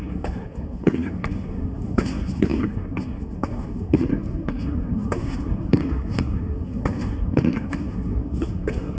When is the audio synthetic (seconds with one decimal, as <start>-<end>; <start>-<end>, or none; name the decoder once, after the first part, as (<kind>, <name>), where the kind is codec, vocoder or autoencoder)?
0.0-9.0 (codec, SNAC)